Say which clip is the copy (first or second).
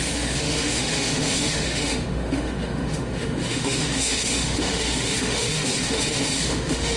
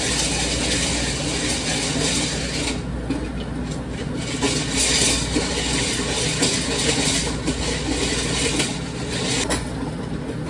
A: first